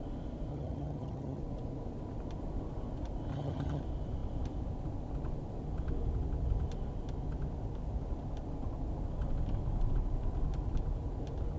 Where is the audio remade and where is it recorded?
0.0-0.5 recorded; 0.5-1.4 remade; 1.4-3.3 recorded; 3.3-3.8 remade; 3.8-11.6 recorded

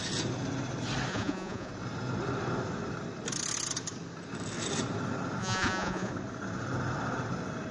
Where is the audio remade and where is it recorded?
0.0-1.1 recorded; 1.1-1.7 remade; 1.7-5.4 recorded; 5.4-6.1 remade; 6.1-7.7 recorded

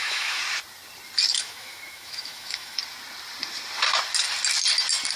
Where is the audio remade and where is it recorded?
0.0-0.4 remade; 0.4-1.4 recorded; 1.4-2.8 remade; 2.8-5.2 recorded